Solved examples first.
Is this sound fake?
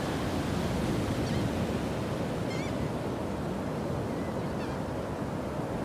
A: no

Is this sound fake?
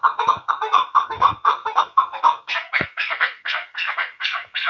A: yes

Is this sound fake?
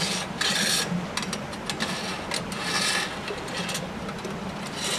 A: no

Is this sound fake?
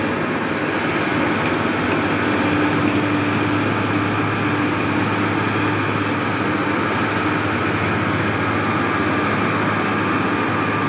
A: no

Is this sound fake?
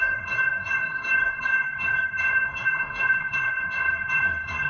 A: yes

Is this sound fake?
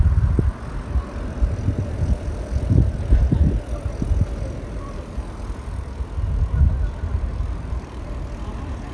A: no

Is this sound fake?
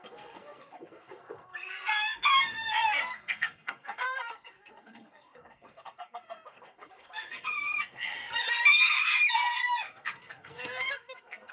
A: yes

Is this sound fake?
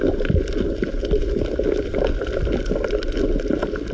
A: no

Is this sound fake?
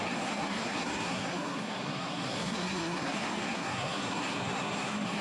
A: yes